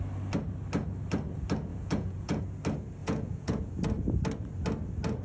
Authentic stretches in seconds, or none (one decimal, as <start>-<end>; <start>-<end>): 0.0-1.7; 2.4-3.0; 3.7-5.2